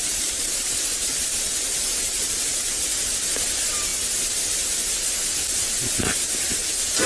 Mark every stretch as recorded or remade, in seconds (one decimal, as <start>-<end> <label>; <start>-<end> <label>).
0.0-2.8 remade; 2.8-7.1 recorded